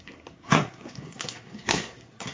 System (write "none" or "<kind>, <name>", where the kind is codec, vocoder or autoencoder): codec, SNAC